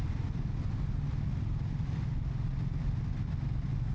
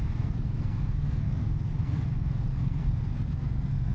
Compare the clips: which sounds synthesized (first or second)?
second